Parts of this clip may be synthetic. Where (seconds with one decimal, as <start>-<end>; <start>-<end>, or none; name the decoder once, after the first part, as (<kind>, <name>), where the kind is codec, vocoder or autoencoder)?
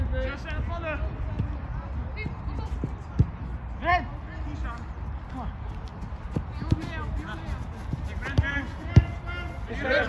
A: none